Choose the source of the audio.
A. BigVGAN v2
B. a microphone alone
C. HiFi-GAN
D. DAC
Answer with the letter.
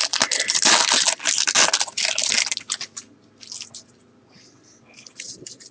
B